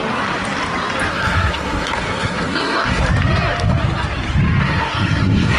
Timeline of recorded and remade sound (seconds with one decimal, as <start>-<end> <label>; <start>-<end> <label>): 0.0-1.1 recorded; 1.1-3.0 remade; 3.0-4.6 recorded; 4.6-5.6 remade

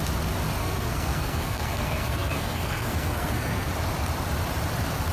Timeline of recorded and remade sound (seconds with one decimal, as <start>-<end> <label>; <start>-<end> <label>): 0.0-0.6 recorded; 0.6-3.7 remade; 3.7-5.1 recorded